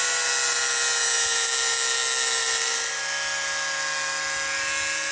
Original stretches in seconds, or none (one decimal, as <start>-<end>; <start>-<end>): 0.0-5.1